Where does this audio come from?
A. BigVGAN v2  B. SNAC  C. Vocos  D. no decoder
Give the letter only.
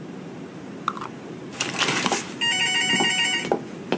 D